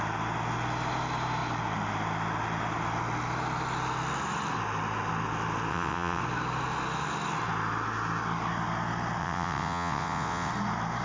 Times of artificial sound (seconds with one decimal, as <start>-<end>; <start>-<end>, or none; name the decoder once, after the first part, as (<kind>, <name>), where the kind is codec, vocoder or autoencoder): 5.7-6.2 (vocoder, WaveNeXt); 9.2-10.5